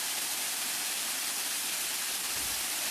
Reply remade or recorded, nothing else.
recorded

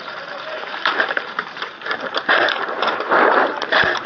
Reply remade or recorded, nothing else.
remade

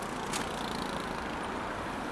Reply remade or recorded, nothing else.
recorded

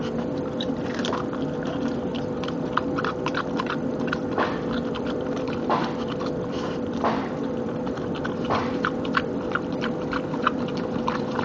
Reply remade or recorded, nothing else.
remade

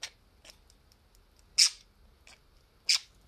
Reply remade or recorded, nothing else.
recorded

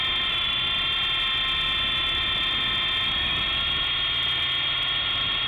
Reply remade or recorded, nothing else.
recorded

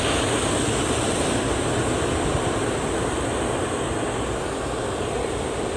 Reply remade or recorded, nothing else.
recorded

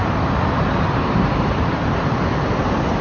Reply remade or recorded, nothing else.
remade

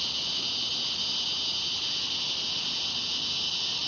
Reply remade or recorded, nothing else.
recorded